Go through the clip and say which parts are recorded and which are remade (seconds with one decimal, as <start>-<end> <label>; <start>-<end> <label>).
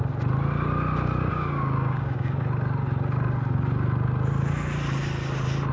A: 0.0-1.3 recorded; 1.3-2.4 remade; 2.4-5.7 recorded